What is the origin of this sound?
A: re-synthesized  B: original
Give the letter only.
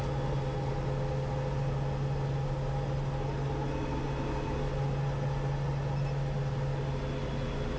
B